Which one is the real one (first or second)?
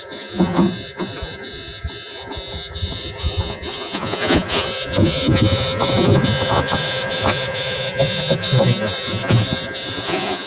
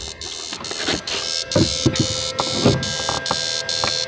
second